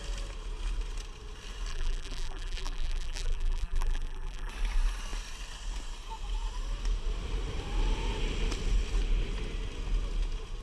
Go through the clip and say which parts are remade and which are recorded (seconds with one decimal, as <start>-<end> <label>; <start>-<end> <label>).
0.0-1.7 recorded; 1.7-4.5 remade; 4.5-10.6 recorded